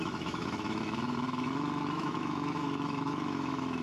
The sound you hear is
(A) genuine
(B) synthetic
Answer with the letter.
B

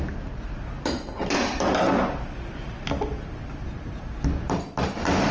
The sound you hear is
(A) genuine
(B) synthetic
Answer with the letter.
A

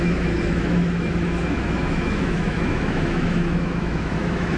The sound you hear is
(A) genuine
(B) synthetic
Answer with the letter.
B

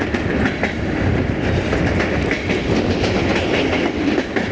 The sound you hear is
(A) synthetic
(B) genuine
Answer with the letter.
B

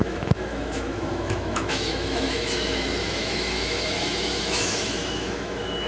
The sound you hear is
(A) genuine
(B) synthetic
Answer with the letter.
B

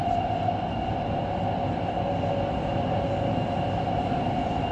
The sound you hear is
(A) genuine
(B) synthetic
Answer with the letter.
A